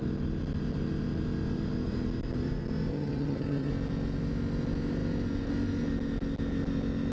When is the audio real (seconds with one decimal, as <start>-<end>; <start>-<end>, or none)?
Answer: 0.0-2.9; 3.7-7.1